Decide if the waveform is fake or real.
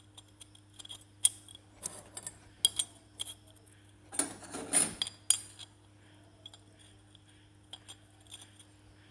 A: real